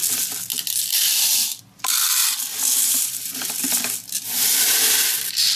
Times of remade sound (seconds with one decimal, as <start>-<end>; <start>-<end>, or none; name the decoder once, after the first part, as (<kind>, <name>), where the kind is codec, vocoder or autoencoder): 1.6-5.6 (vocoder, BigVGAN v2)